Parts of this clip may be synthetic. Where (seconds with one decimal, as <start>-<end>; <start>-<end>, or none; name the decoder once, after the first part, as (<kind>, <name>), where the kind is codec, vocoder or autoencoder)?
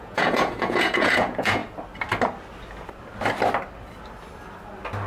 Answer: 0.0-1.6 (vocoder, Vocos)